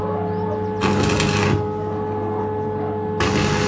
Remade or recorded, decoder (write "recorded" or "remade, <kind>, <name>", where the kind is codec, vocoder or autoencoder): recorded